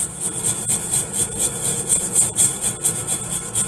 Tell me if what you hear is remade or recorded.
recorded